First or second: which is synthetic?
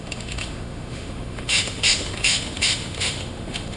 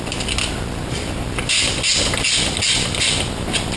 first